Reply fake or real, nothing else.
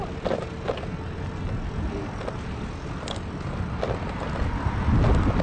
real